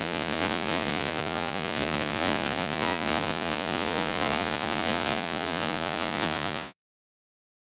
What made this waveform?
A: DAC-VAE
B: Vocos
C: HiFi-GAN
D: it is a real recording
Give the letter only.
B